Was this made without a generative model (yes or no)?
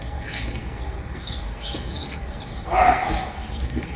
no